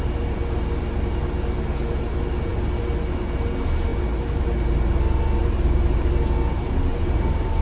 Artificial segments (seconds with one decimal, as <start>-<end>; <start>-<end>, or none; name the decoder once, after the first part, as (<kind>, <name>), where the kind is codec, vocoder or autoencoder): 5.4-6.2 (vocoder, BigVGAN v2); 6.9-7.6